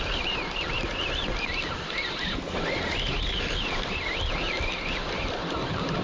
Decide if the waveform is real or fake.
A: real